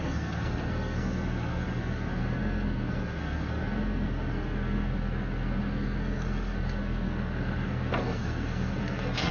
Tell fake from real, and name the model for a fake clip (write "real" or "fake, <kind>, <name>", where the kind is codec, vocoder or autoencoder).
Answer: fake, codec, SNAC